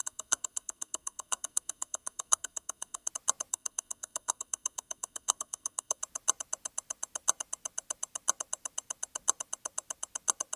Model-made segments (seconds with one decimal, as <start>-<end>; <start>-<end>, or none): 0.0-3.1; 3.5-6.0